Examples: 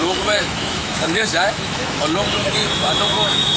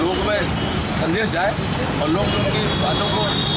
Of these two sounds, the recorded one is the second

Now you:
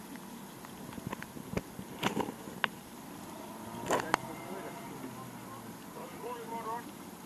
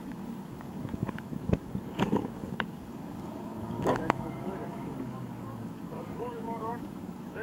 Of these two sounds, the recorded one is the first